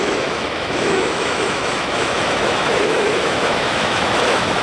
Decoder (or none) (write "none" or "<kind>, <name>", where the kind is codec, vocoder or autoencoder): autoencoder, DAC-VAE